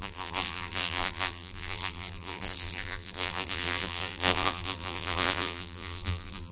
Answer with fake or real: fake